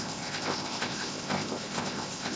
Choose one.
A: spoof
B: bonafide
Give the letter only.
A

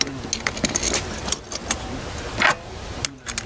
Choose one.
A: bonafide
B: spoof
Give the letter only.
A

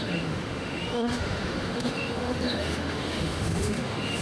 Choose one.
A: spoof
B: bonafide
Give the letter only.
A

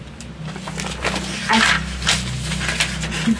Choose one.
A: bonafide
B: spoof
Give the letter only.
A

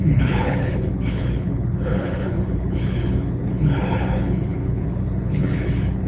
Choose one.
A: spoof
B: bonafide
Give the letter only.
A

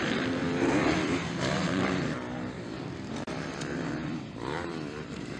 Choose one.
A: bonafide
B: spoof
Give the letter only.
B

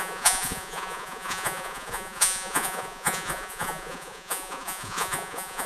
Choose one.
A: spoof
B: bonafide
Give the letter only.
A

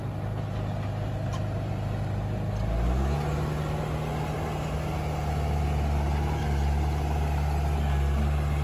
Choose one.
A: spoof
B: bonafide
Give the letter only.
B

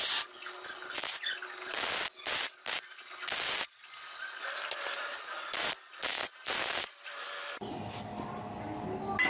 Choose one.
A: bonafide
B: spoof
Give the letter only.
A